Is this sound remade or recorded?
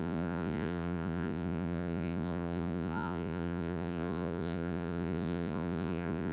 remade